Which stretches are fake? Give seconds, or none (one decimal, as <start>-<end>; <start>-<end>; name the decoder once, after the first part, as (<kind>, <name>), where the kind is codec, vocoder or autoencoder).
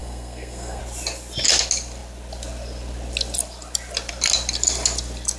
0.0-0.8 (codec, SNAC)